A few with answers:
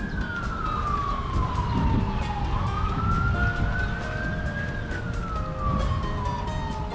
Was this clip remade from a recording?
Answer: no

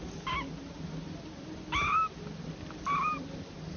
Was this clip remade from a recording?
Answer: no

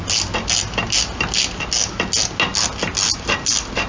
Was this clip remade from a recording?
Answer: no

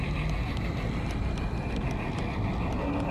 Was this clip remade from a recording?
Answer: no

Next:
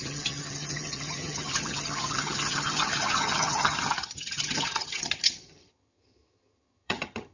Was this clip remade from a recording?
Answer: yes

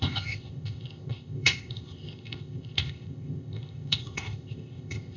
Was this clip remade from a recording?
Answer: yes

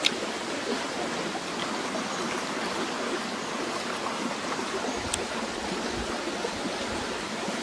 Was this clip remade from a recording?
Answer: no